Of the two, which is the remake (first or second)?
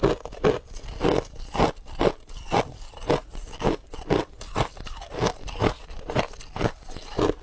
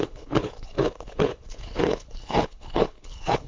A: second